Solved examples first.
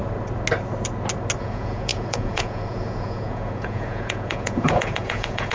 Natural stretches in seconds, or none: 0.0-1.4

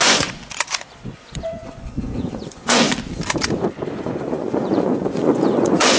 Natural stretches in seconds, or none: 2.9-4.0

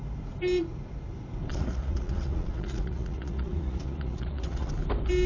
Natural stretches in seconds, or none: 0.0-1.5; 4.7-5.3